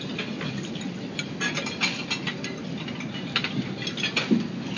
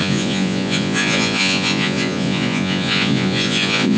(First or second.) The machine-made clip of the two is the second